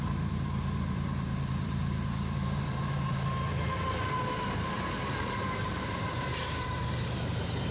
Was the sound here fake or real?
fake